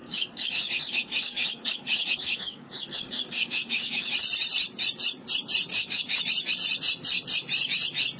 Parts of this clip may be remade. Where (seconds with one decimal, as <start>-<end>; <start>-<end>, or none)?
0.0-4.1; 5.7-6.2